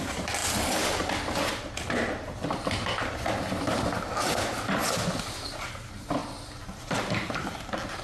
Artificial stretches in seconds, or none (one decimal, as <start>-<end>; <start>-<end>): none